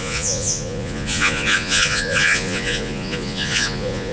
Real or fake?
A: fake